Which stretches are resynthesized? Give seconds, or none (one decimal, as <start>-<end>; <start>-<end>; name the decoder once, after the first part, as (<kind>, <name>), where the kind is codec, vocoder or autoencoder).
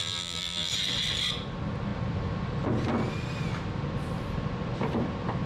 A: 0.0-0.7 (vocoder, BigVGAN v2)